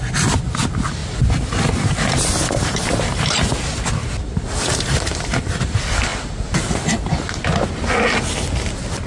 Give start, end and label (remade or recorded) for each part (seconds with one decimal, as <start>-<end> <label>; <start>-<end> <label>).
0.0-9.1 recorded